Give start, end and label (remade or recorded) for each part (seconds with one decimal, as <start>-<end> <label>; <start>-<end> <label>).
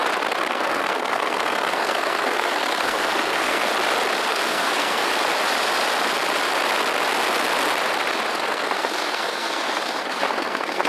0.0-0.5 recorded; 0.5-3.7 remade; 3.7-4.3 recorded; 4.3-5.1 remade; 5.1-8.3 recorded; 8.3-10.9 remade